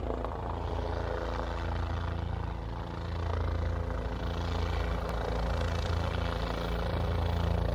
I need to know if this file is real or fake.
real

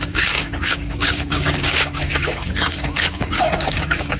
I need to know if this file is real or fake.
fake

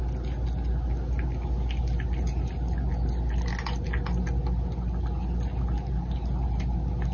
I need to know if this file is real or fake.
real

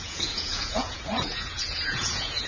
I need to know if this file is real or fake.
fake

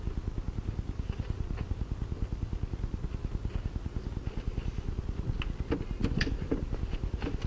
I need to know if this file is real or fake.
real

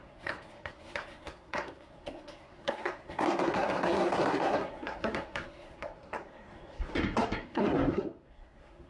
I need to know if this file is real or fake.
fake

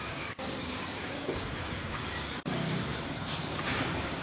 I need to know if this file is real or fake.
fake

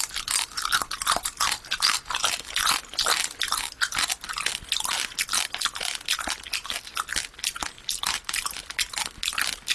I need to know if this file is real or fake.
real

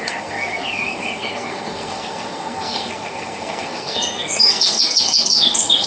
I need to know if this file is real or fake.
fake